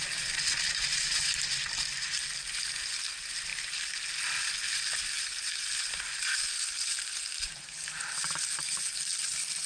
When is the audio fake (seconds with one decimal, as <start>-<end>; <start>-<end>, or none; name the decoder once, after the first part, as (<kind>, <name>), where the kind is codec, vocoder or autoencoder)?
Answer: none